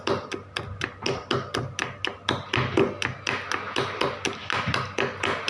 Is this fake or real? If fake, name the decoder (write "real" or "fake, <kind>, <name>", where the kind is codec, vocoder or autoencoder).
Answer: real